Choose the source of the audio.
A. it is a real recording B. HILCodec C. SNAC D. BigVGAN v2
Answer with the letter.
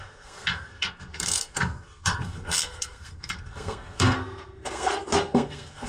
C